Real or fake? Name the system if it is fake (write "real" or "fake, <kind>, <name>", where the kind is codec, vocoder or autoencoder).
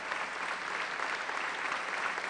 real